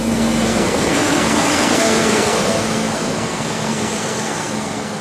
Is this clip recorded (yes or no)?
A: no